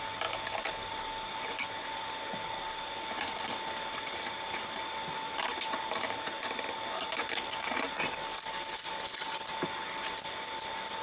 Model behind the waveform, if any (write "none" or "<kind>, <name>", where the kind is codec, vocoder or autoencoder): none